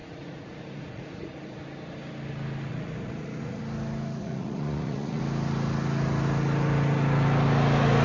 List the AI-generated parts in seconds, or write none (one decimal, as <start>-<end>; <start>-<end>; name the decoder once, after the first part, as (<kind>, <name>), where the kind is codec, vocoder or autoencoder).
0.0-1.6 (vocoder, Vocos); 2.7-3.6; 4.2-5.2